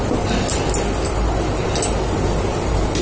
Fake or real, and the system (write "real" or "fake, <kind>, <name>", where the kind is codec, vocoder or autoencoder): real